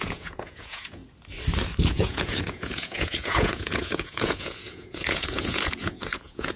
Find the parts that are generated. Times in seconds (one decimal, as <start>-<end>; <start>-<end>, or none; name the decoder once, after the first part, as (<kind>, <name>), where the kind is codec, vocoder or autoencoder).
0.0-1.0 (vocoder, Vocos); 1.9-6.6